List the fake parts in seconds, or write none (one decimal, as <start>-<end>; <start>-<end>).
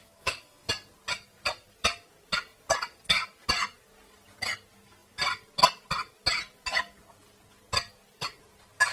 0.0-0.7